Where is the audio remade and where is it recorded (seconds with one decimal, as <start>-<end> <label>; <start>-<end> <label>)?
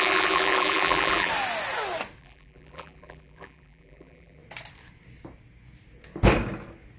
0.0-1.3 remade; 1.3-2.2 recorded; 2.2-4.4 remade; 4.4-7.0 recorded